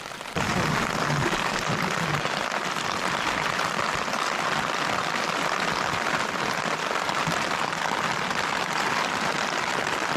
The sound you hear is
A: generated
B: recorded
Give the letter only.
B